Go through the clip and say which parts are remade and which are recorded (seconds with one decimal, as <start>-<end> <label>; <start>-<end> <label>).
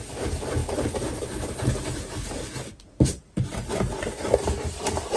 0.0-5.2 recorded